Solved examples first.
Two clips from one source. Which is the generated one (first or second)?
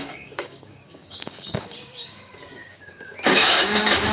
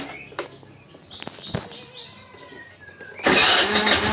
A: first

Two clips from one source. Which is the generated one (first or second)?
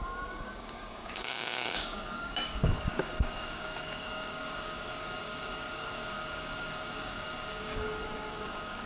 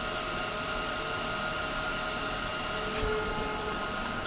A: first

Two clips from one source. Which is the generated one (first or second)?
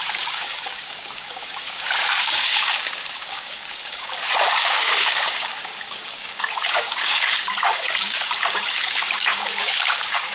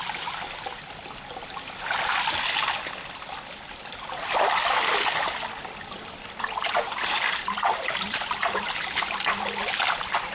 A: first